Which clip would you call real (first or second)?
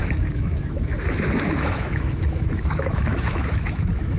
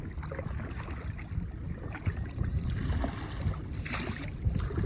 second